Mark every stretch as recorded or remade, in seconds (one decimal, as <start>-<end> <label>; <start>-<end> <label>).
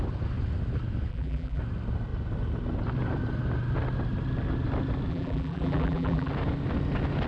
0.0-1.1 recorded; 1.1-1.6 remade; 1.6-5.1 recorded; 5.1-6.3 remade; 6.3-7.3 recorded